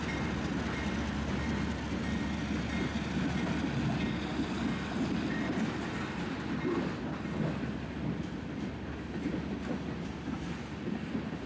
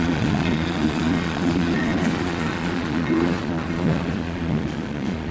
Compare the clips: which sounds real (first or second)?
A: first